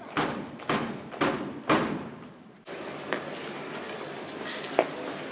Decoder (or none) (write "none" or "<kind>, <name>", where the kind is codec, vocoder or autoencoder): none